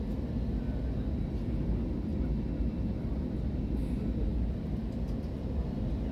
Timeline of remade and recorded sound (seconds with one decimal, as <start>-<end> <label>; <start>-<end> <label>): 0.0-6.1 recorded